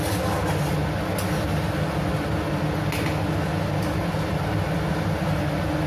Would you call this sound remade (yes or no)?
no